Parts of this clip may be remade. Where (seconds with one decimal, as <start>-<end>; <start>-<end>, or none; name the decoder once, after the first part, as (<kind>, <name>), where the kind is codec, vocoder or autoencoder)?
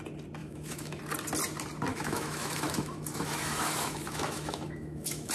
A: 0.4-1.0 (autoencoder, DAC-VAE); 1.9-5.3